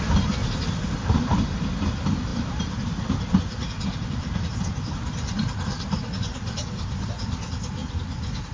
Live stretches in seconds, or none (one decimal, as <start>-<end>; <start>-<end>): 0.4-1.7